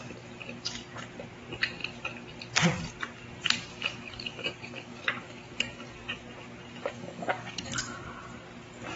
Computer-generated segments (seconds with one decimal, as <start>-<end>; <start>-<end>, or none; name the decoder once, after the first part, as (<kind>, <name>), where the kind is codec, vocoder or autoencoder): 3.7-6.2 (codec, DAC); 6.8-8.1